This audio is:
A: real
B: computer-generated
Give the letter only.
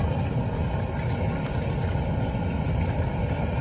A